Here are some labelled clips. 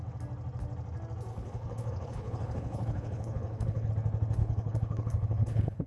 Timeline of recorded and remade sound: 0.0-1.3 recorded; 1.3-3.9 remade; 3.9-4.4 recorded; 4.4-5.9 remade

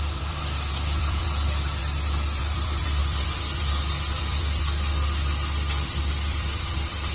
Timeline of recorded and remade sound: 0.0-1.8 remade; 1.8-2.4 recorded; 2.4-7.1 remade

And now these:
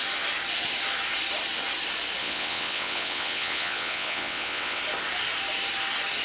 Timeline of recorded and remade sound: 0.0-2.2 recorded; 2.2-4.8 remade; 4.8-6.2 recorded

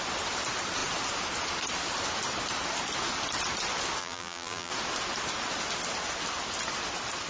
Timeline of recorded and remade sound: 0.0-4.0 recorded; 4.0-4.7 remade; 4.7-7.3 recorded